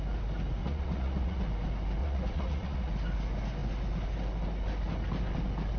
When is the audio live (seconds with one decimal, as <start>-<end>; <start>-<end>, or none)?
0.0-0.6; 1.4-2.0; 2.9-5.8

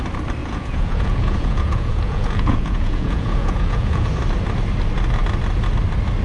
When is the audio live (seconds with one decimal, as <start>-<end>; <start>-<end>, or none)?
0.0-0.4; 4.1-6.2